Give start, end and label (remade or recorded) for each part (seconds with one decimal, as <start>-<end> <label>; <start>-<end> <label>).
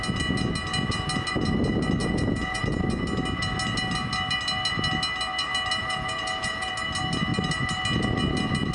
0.0-2.0 recorded; 2.0-2.6 remade; 2.6-5.8 recorded; 5.8-6.7 remade; 6.7-8.7 recorded